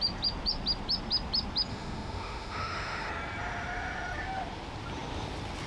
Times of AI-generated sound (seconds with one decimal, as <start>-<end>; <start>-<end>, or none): 1.7-3.1